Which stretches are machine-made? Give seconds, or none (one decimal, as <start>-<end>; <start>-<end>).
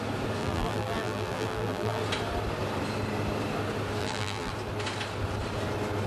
0.4-2.0; 4.0-4.5